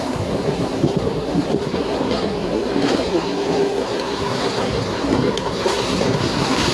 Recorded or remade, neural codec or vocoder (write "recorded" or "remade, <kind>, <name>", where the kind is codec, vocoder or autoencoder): remade, codec, SNAC